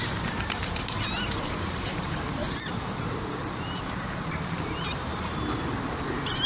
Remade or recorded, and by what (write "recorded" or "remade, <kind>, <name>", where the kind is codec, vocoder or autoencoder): remade, vocoder, BigVGAN v2